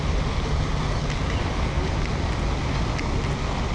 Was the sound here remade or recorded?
recorded